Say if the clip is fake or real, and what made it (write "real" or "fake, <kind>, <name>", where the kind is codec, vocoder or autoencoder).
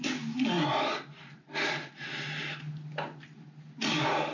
real